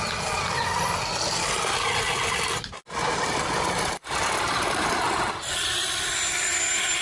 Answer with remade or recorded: recorded